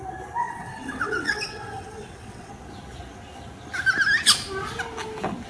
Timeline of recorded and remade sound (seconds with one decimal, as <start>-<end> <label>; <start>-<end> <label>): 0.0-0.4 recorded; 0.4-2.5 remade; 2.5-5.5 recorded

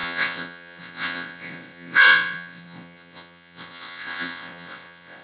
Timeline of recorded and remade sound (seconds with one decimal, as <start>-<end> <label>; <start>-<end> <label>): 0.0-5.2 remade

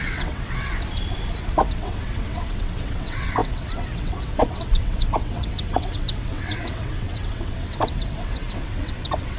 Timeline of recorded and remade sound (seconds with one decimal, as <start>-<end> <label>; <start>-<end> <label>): 0.0-0.7 remade; 0.7-1.4 recorded; 1.4-9.4 remade

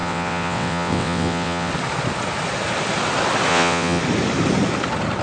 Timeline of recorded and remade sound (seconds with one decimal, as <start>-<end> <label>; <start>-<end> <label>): 0.0-1.7 remade; 1.7-3.5 recorded; 3.5-4.0 remade; 4.0-5.2 recorded

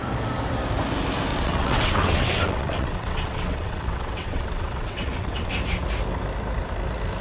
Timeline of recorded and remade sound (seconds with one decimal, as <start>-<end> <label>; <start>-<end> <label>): 0.0-1.3 recorded; 1.3-5.5 remade; 5.5-7.2 recorded

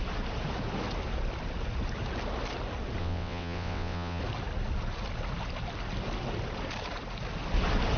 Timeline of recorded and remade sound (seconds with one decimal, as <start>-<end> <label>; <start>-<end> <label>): 0.0-3.0 recorded; 3.0-4.2 remade; 4.2-8.0 recorded

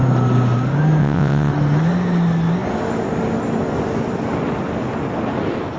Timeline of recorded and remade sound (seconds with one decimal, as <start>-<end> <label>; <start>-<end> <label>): 0.0-1.0 recorded; 1.0-1.5 remade; 1.5-5.8 recorded